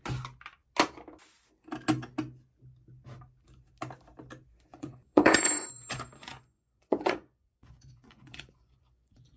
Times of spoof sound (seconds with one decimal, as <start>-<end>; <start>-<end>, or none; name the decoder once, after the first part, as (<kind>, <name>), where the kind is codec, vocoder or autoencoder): 4.7-9.4 (vocoder, Vocos)